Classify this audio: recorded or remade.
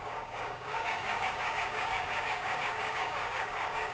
remade